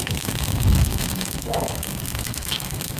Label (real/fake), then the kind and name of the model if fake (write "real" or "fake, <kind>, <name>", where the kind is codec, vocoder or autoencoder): fake, codec, SNAC